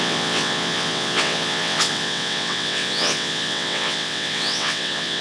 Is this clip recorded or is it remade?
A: remade